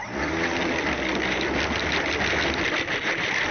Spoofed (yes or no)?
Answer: yes